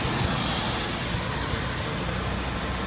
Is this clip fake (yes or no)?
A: no